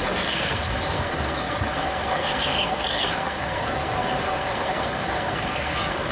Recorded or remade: remade